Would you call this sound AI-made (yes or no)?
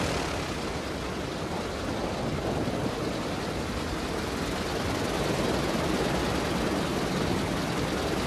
no